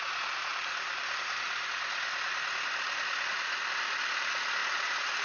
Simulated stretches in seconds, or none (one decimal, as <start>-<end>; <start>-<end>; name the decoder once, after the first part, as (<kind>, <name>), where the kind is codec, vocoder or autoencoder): none